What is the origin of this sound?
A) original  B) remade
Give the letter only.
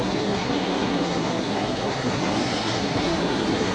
B